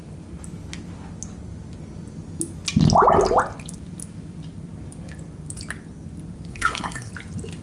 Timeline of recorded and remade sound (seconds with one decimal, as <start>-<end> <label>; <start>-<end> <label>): 0.0-6.5 recorded; 6.5-7.1 remade; 7.1-7.6 recorded